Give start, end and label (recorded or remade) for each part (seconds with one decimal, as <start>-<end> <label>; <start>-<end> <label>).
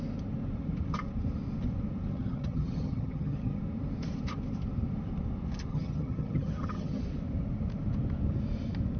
0.0-2.1 recorded; 2.1-3.6 remade; 3.6-5.7 recorded; 5.7-7.0 remade; 7.0-9.0 recorded